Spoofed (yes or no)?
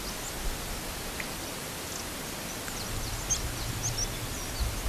no